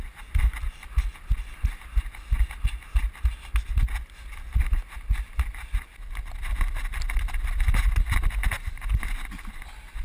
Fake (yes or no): no